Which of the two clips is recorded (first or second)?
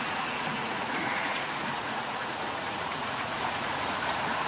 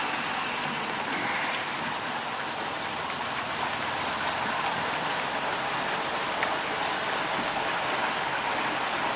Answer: second